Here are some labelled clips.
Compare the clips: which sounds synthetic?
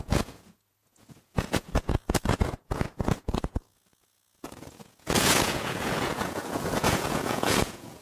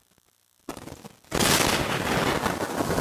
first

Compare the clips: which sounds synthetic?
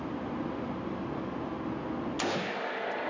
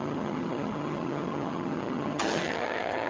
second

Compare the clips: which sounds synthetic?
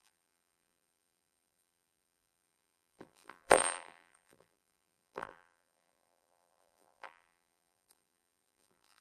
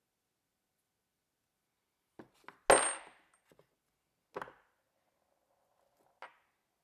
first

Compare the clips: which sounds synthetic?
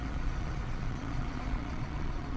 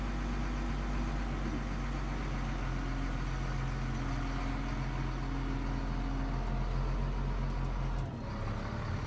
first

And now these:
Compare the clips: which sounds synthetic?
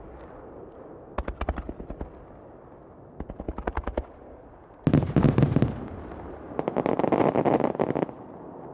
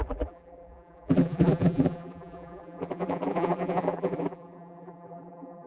second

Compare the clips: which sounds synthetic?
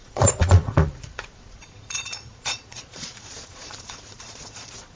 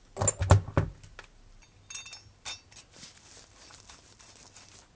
first